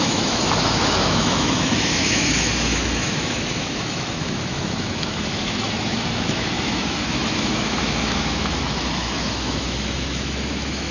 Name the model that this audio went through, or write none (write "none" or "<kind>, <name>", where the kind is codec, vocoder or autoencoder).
autoencoder, DAC-VAE